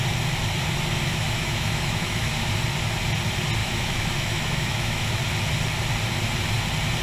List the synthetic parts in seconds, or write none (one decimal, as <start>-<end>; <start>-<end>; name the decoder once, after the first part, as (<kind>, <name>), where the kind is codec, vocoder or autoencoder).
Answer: 1.1-2.3 (autoencoder, DAC-VAE); 3.6-5.2